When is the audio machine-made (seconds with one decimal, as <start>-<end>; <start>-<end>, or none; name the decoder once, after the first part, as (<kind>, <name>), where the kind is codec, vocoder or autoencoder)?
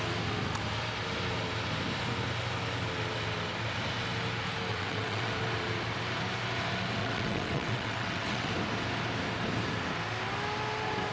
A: 4.7-5.3 (vocoder, WaveNeXt); 7.0-8.5